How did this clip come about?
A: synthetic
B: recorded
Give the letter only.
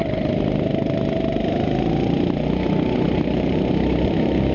B